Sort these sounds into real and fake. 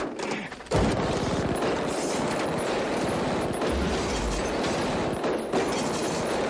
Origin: real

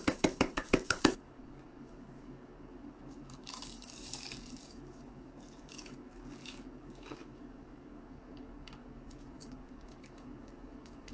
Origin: fake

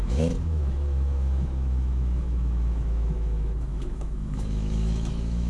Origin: fake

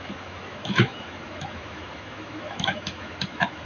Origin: fake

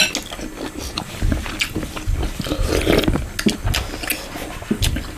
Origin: real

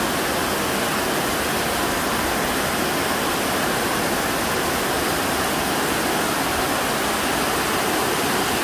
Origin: real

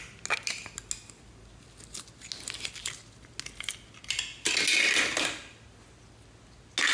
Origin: real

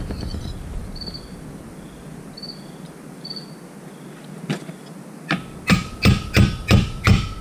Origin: real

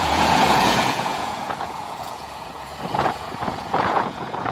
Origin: fake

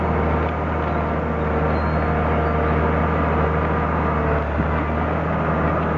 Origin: real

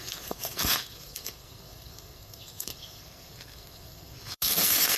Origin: fake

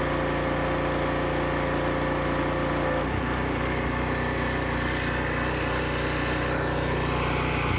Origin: real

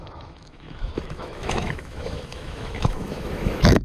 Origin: fake